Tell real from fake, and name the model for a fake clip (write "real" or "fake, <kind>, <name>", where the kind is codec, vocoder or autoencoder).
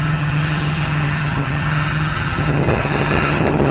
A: fake, vocoder, HiFi-GAN